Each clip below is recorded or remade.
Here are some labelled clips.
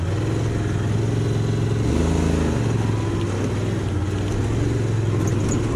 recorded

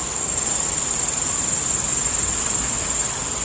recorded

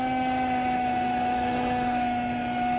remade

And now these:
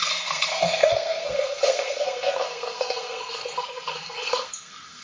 remade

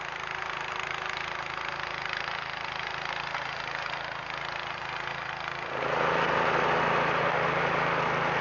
recorded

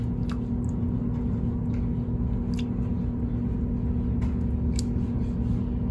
recorded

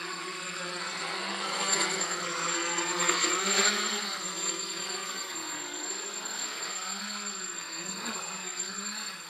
remade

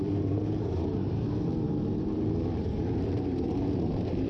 remade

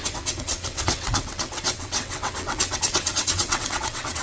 remade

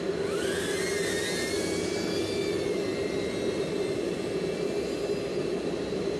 recorded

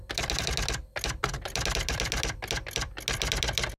recorded